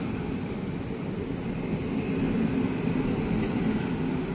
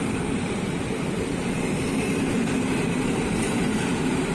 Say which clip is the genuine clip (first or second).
first